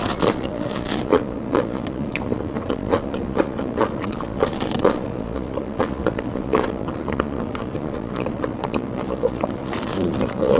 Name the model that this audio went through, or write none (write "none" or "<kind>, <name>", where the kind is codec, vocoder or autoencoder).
vocoder, Vocos